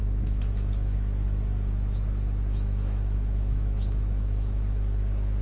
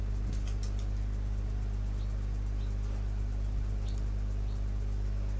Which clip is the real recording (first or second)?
second